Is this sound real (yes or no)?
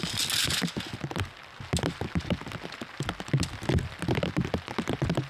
yes